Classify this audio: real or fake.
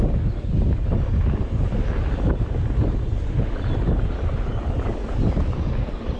real